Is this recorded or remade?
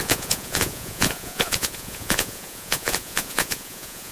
remade